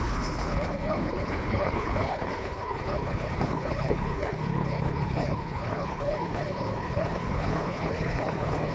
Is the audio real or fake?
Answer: fake